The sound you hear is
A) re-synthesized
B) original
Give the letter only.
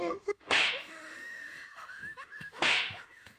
A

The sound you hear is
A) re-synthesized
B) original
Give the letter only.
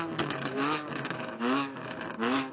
A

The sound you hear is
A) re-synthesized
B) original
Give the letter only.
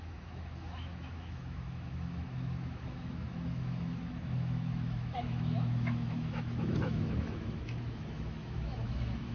A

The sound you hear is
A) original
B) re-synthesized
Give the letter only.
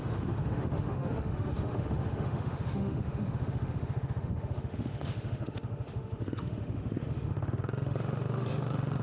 B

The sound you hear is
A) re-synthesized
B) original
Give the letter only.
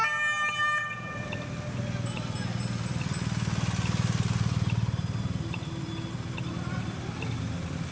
B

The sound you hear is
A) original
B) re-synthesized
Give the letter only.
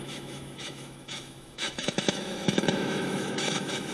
B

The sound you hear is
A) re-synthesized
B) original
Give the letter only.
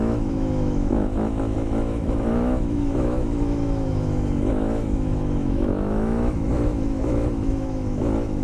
A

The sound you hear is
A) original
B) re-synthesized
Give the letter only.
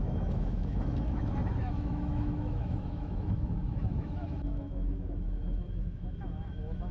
B